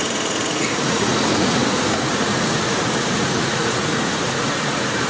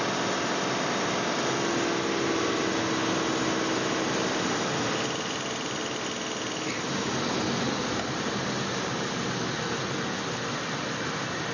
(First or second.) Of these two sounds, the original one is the second